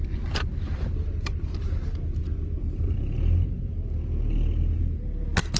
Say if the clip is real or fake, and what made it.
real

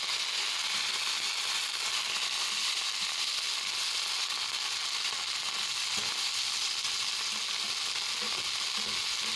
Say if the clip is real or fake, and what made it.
real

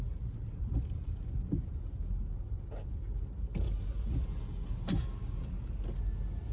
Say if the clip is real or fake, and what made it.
real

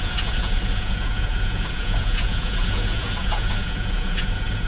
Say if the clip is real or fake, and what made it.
fake, vocoder, Vocos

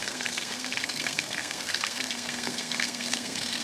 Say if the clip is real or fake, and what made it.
fake, codec, SNAC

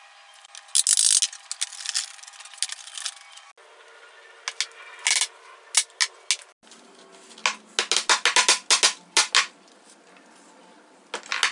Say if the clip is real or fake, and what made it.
real